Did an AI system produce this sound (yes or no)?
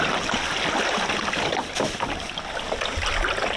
no